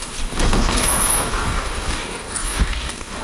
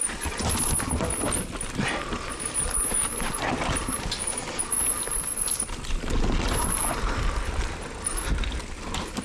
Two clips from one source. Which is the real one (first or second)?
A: second